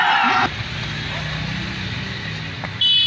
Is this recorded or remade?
recorded